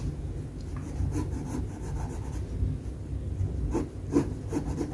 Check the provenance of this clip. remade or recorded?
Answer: recorded